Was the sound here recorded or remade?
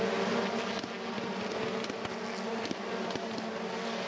recorded